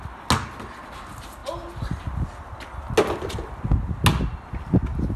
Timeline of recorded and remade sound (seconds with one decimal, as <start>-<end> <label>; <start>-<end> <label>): 0.0-5.2 recorded